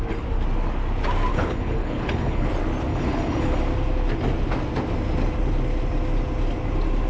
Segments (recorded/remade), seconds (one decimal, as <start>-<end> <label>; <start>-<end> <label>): 0.0-1.3 recorded; 1.3-2.5 remade; 2.5-2.9 recorded; 2.9-3.6 remade; 3.6-7.1 recorded